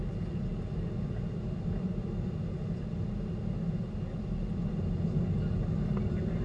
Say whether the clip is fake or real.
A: real